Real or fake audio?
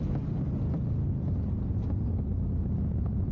fake